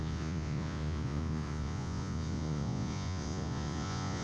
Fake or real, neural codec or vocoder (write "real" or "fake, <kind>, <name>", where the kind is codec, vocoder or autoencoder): fake, vocoder, Vocos